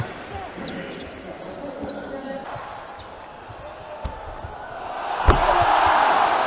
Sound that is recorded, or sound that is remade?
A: recorded